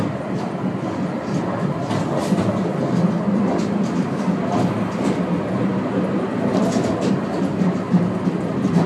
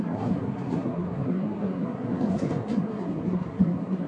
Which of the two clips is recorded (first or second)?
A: first